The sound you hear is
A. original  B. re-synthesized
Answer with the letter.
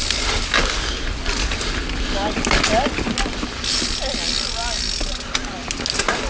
A